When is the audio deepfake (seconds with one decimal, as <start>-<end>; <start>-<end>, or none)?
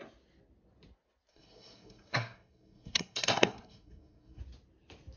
1.3-4.4